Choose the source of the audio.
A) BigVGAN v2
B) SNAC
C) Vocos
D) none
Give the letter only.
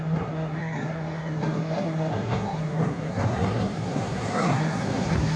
B